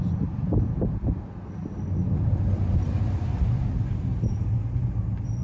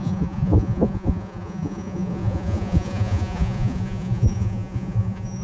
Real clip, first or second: first